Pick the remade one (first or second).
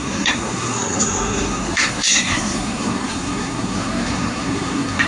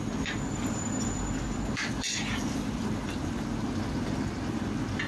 first